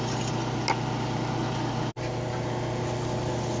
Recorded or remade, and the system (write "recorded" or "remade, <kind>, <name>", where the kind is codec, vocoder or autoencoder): recorded